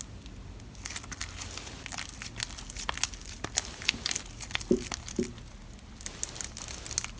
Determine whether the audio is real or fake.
real